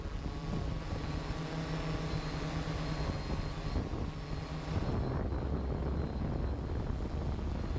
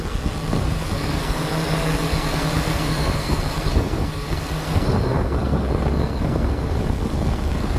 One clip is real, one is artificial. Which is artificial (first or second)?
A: second